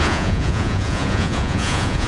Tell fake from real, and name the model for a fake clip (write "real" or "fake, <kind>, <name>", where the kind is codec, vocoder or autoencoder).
fake, vocoder, Vocos